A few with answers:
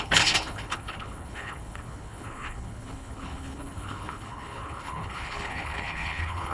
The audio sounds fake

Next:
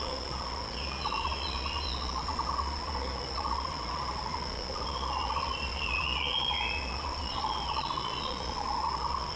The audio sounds fake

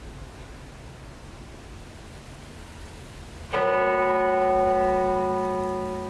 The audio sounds real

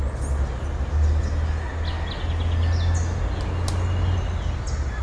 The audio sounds real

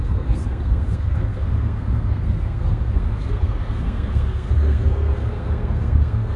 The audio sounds fake